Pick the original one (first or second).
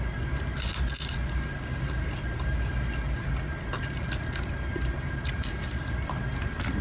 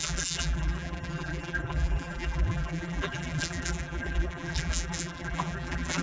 first